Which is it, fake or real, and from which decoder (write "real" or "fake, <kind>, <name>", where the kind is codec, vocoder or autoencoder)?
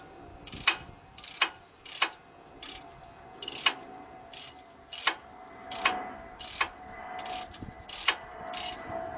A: real